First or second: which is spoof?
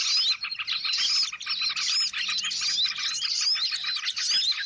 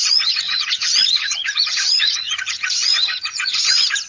second